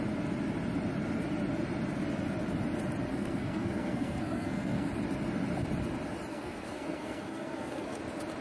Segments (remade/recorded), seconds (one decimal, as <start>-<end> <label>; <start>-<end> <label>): 0.0-3.1 recorded; 3.1-4.9 remade; 4.9-6.3 recorded; 6.3-8.0 remade; 8.0-8.4 recorded